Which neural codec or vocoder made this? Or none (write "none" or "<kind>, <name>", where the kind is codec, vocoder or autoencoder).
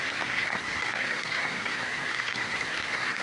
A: codec, SNAC